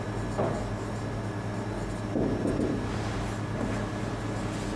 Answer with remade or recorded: recorded